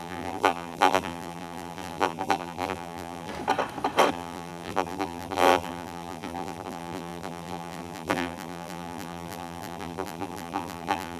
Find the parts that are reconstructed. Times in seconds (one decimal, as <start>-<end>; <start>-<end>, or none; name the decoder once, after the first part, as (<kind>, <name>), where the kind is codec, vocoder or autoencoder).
0.0-3.3 (vocoder, BigVGAN v2); 4.1-11.2